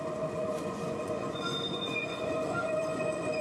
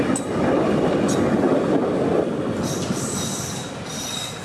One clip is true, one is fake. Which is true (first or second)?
second